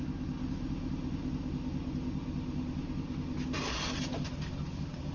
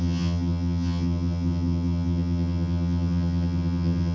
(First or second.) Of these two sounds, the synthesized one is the second